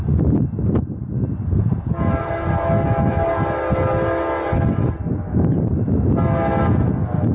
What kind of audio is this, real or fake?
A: real